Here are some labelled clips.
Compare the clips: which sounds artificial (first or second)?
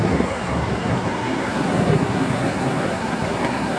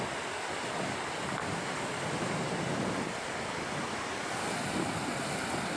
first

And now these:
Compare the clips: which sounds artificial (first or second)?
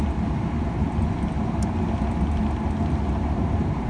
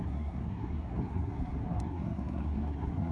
second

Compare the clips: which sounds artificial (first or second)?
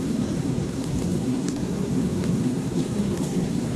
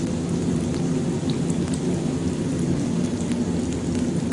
first